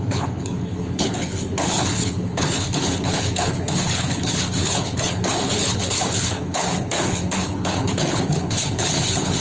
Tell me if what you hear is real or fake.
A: fake